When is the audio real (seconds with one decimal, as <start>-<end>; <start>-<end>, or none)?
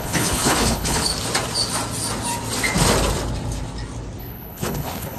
1.1-4.2